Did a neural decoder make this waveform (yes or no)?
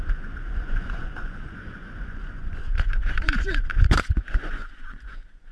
yes